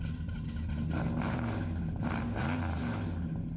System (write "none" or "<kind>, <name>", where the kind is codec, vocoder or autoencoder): none